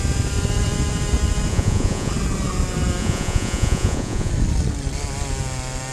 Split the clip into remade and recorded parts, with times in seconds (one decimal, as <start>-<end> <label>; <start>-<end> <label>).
0.0-1.5 recorded; 1.5-2.1 remade; 2.1-3.0 recorded; 3.0-4.3 remade; 4.3-5.9 recorded